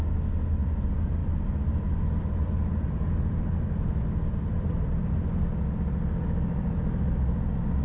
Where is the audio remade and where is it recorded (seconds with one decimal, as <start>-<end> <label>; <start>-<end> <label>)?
0.0-1.2 recorded; 1.2-5.1 remade; 5.1-7.8 recorded